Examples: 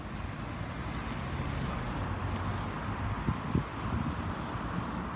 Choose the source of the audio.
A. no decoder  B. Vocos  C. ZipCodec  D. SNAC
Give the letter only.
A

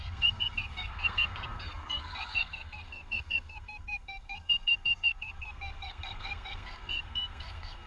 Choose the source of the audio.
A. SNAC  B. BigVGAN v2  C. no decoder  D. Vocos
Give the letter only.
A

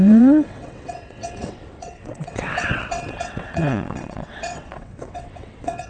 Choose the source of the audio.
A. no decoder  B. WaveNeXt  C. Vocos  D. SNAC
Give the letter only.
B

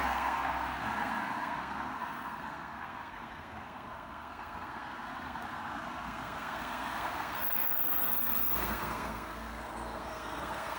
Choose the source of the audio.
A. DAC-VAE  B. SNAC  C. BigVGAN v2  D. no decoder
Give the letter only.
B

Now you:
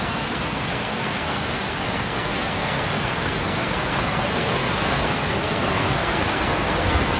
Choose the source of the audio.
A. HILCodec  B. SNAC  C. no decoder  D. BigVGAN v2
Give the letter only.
B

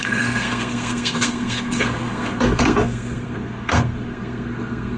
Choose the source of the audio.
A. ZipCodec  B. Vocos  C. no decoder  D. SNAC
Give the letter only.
D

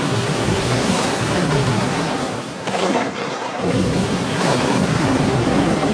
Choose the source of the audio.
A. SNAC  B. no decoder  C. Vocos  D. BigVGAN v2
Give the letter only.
A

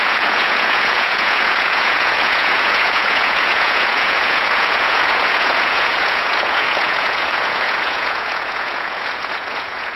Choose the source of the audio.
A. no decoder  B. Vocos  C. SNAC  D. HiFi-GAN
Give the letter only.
B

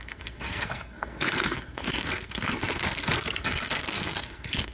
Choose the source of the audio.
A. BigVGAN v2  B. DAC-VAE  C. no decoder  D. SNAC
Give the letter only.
D